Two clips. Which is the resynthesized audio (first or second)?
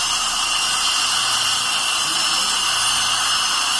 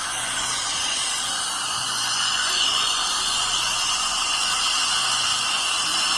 second